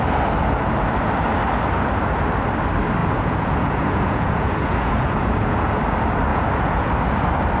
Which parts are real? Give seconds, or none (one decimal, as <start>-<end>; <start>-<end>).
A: 0.0-3.0; 5.8-6.3; 6.9-7.6